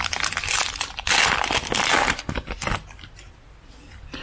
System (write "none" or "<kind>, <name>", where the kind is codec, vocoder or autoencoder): none